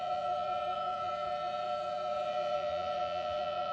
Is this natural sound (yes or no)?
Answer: no